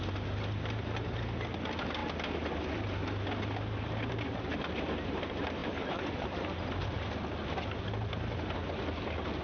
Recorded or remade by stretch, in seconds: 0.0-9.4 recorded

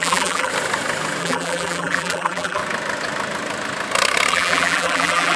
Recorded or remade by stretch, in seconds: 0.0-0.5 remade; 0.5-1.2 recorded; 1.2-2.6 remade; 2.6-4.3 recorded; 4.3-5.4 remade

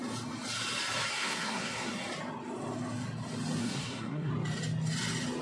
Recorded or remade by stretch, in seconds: 0.0-1.1 recorded; 1.1-1.9 remade; 1.9-3.6 recorded; 3.6-4.3 remade; 4.3-5.4 recorded

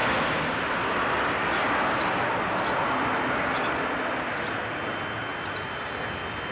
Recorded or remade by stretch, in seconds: 0.0-6.5 recorded

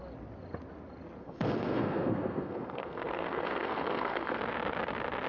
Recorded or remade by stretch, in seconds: 0.0-1.2 recorded; 1.2-4.4 remade; 4.4-5.3 recorded

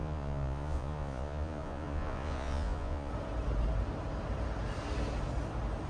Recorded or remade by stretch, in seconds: 0.0-3.1 remade; 3.1-5.9 recorded